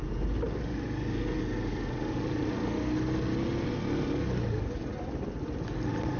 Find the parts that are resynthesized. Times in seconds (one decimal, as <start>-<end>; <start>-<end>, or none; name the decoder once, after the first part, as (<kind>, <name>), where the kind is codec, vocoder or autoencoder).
none